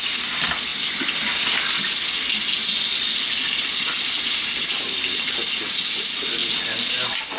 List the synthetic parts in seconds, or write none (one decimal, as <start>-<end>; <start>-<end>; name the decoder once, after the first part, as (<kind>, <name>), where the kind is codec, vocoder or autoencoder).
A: none